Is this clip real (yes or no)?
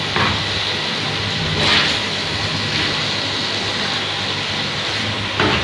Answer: yes